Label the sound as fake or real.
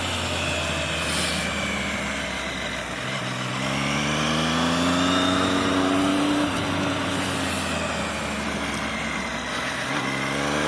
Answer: real